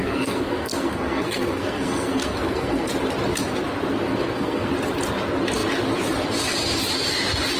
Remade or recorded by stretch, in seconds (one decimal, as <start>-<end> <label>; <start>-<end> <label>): 0.0-2.9 remade; 2.9-4.0 recorded; 4.0-4.7 remade; 4.7-7.6 recorded

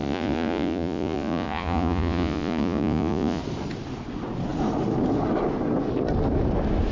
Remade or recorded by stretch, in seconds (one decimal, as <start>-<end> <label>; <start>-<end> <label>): 0.0-3.4 remade; 3.4-6.9 recorded

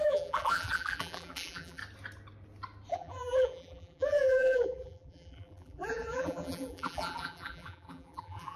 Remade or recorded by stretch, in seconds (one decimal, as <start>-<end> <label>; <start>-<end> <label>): 0.0-1.8 remade; 1.8-2.9 recorded; 2.9-8.6 remade

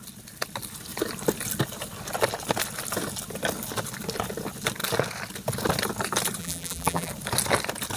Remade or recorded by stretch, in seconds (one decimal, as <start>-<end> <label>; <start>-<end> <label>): 0.0-6.4 recorded; 6.4-7.1 remade; 7.1-8.0 recorded

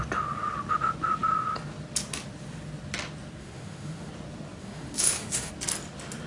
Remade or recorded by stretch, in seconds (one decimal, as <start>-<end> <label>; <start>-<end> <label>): 0.0-3.4 recorded; 3.4-4.1 remade; 4.1-4.6 recorded; 4.6-5.5 remade; 5.5-6.3 recorded

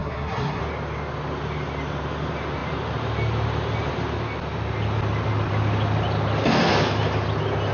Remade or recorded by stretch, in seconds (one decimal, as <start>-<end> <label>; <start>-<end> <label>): 0.0-0.6 remade; 0.6-7.7 recorded